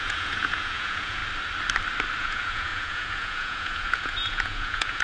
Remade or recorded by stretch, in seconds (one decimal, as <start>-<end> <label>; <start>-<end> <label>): 0.0-1.2 remade; 1.2-2.2 recorded; 2.2-5.0 remade